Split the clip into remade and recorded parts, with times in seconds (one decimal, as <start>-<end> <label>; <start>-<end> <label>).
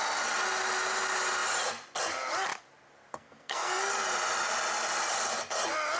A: 0.0-3.1 recorded; 3.1-3.9 remade; 3.9-6.0 recorded